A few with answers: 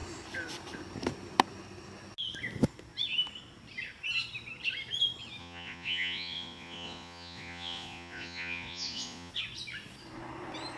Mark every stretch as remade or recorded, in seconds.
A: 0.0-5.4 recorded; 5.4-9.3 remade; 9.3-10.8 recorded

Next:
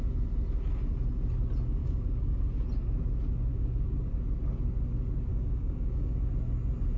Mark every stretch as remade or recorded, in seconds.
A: 0.0-1.8 recorded; 1.8-2.4 remade; 2.4-3.5 recorded; 3.5-4.1 remade; 4.1-5.3 recorded; 5.3-6.3 remade; 6.3-7.0 recorded